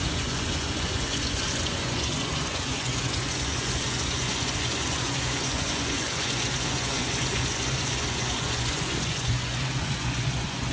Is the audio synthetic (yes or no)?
yes